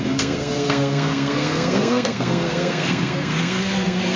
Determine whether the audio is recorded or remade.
remade